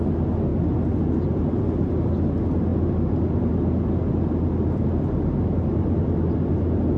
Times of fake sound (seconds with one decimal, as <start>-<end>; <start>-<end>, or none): none